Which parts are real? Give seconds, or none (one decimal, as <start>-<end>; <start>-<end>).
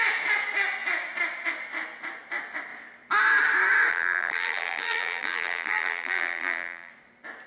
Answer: 0.0-3.9; 6.9-7.5